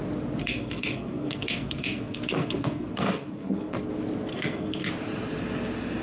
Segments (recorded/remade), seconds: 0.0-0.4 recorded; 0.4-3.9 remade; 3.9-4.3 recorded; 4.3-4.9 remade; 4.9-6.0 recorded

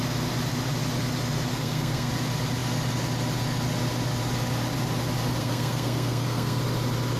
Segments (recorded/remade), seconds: 0.0-1.5 recorded; 1.5-2.1 remade; 2.1-5.4 recorded; 5.4-6.6 remade; 6.6-7.2 recorded

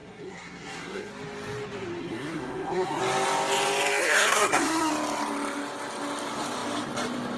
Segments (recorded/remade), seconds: 0.0-1.1 remade; 1.1-2.0 recorded; 2.0-3.0 remade; 3.0-4.0 recorded; 4.0-4.9 remade; 4.9-7.4 recorded

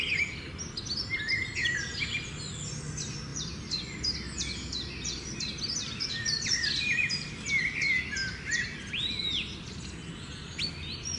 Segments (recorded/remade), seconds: 0.0-11.2 recorded

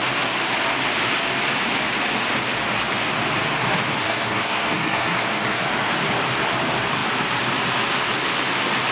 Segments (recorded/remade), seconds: 0.0-4.0 recorded; 4.0-5.6 remade; 5.6-8.9 recorded

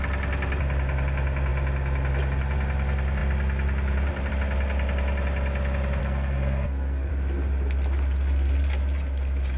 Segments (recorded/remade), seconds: 0.0-6.0 recorded; 6.0-7.1 remade; 7.1-9.6 recorded

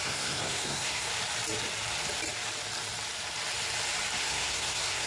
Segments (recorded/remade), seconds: 0.0-1.1 remade; 1.1-4.2 recorded; 4.2-5.1 remade

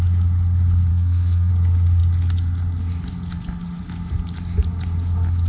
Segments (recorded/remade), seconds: 0.0-0.9 recorded; 0.9-1.5 remade; 1.5-5.5 recorded